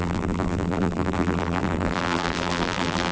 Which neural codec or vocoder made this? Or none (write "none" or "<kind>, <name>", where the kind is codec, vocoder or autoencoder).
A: vocoder, BigVGAN v2